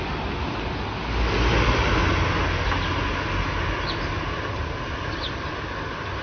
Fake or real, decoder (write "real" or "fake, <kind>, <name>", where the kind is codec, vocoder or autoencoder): real